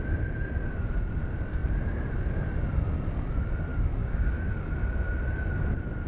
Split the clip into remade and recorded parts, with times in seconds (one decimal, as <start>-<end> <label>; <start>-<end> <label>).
0.0-3.7 recorded; 3.7-4.5 remade; 4.5-6.1 recorded